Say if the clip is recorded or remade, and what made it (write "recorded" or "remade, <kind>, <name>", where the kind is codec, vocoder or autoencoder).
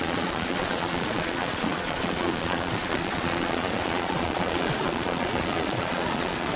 remade, vocoder, Vocos